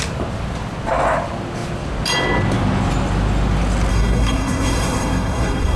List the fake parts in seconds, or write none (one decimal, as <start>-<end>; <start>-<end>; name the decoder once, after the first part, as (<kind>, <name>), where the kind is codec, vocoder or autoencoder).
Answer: 3.9-5.8 (codec, SNAC)